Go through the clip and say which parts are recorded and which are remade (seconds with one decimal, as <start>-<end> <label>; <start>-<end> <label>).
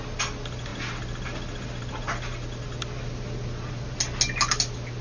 0.0-5.0 recorded